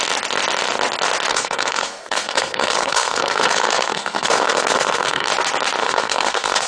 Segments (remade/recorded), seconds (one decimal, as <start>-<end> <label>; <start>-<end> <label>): 0.0-1.3 recorded; 1.3-5.3 remade; 5.3-5.8 recorded; 5.8-6.7 remade